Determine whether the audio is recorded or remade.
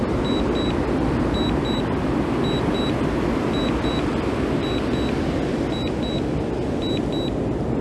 recorded